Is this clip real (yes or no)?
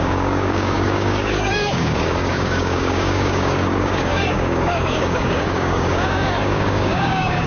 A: no